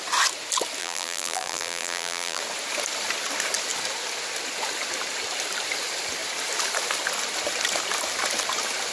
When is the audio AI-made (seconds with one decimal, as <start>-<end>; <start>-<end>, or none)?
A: 0.8-2.4